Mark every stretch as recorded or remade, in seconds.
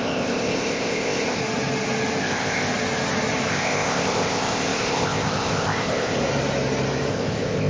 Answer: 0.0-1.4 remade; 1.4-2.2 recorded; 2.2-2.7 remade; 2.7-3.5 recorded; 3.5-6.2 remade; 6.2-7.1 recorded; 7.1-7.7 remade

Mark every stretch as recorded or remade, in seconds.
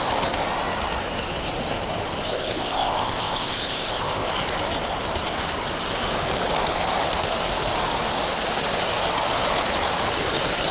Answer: 0.0-2.2 recorded; 2.2-4.3 remade; 4.3-10.7 recorded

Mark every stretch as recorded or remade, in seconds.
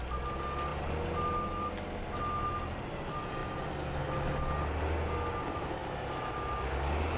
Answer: 0.0-7.2 recorded